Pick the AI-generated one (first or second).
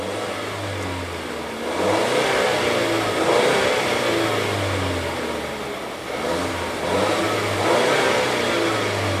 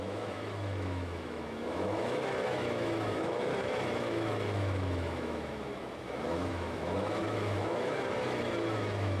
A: second